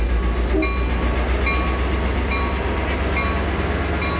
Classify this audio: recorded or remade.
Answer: recorded